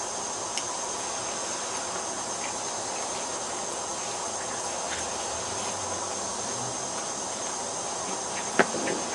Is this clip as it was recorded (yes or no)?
yes